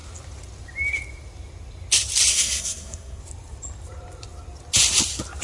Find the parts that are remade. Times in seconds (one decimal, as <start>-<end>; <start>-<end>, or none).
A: 2.3-3.2